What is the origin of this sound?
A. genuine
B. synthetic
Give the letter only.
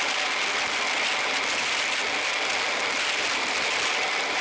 A